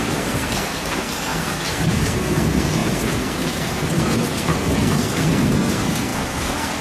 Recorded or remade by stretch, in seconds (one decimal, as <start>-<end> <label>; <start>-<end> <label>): 0.0-6.8 remade